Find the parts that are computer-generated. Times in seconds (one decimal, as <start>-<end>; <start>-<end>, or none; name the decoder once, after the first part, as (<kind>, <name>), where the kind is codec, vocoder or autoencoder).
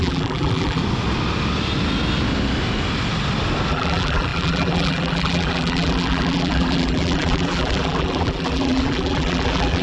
0.0-0.8 (vocoder, BigVGAN v2); 3.7-9.8